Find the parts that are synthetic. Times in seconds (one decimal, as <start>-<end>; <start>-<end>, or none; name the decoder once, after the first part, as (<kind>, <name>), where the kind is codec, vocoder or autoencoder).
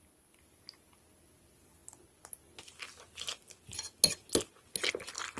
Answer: none